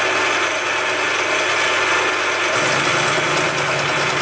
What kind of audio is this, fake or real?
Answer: real